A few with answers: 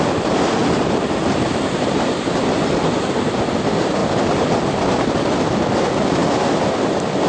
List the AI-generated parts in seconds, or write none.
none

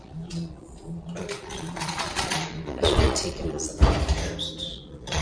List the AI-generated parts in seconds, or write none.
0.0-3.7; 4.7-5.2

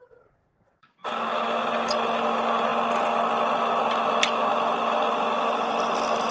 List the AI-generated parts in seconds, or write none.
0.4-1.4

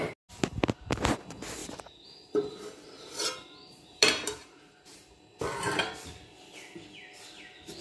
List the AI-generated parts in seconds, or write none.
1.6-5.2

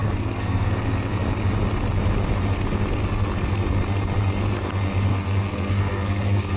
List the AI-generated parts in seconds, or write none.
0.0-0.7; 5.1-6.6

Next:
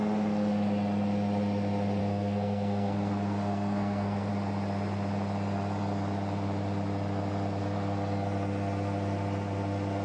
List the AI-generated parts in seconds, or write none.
2.0-4.3

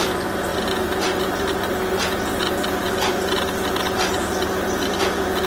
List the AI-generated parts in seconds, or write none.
none